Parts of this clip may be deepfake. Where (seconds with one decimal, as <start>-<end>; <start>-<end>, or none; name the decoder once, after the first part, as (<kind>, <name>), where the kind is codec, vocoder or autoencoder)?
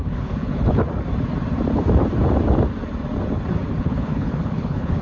0.0-0.8 (codec, HILCodec); 3.8-5.0